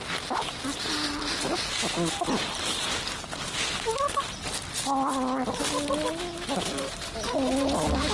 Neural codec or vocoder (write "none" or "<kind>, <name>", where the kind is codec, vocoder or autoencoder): none